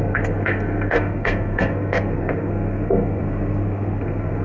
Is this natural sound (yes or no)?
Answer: no